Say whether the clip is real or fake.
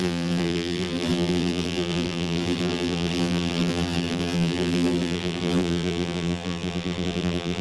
fake